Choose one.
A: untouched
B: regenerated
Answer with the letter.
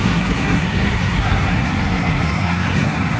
B